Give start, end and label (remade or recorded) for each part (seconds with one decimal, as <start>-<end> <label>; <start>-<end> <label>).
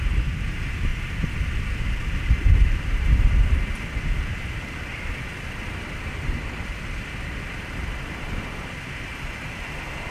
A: 0.0-0.9 recorded; 0.9-3.6 remade; 3.6-4.9 recorded; 4.9-7.8 remade; 7.8-10.1 recorded